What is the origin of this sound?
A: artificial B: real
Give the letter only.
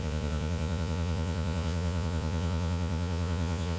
A